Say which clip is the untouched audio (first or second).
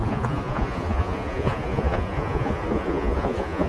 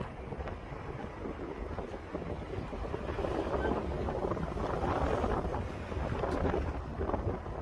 second